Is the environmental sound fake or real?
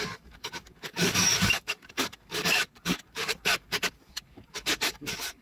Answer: fake